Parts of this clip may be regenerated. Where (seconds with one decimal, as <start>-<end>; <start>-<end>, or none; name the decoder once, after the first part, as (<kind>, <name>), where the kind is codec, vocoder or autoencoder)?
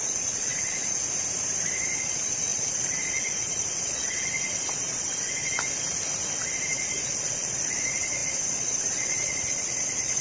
0.0-1.0 (vocoder, Vocos); 2.0-5.5; 6.7-10.2